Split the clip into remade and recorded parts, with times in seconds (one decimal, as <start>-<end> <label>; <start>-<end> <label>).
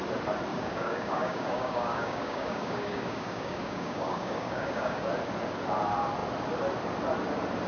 0.0-0.5 recorded; 0.5-5.1 remade; 5.1-7.7 recorded